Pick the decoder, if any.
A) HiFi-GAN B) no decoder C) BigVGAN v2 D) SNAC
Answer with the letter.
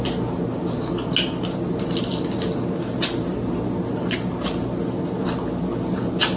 B